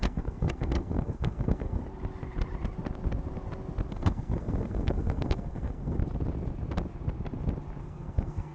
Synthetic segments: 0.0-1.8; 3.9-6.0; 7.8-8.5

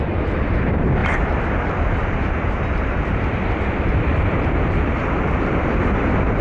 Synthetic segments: 0.0-1.0; 2.3-6.4

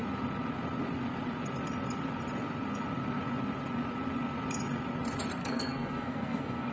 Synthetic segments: 5.4-6.7

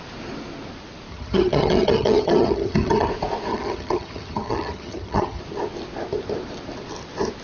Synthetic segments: 1.1-3.1; 3.5-5.4